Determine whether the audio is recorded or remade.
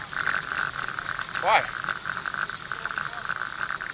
recorded